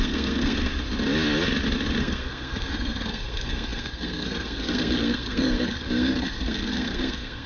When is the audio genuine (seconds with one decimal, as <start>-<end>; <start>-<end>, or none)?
0.7-2.0